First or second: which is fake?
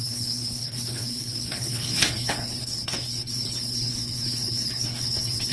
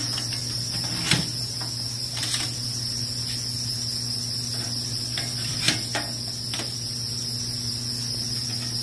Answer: first